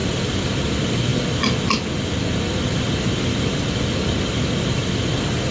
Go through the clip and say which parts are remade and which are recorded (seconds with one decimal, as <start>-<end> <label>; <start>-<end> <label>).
0.0-5.5 recorded

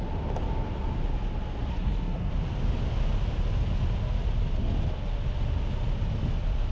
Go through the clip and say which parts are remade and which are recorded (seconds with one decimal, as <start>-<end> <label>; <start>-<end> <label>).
0.0-1.7 recorded; 1.7-2.3 remade; 2.3-6.7 recorded

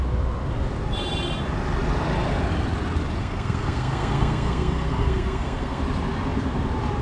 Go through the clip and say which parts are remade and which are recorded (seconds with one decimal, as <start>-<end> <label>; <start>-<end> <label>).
0.0-3.2 recorded; 3.2-5.8 remade; 5.8-7.0 recorded

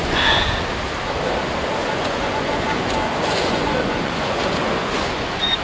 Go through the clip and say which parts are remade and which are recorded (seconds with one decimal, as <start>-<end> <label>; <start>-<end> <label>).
0.0-0.7 remade; 0.7-1.8 recorded; 1.8-5.6 remade